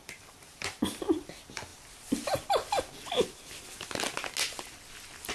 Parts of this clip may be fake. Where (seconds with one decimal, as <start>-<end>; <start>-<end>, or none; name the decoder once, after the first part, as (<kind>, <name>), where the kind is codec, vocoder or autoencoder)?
0.0-0.8 (vocoder, BigVGAN v2)